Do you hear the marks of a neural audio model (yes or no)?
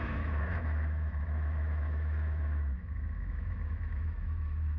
yes